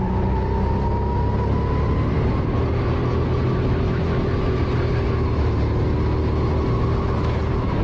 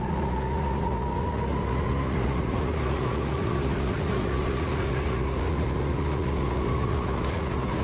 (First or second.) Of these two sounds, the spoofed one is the second